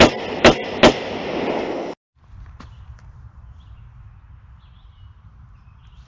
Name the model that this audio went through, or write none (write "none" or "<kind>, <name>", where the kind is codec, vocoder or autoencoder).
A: none